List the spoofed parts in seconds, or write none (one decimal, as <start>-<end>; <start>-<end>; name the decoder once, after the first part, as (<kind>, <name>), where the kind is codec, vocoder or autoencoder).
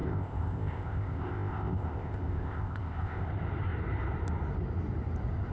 0.0-3.3 (codec, ZipCodec)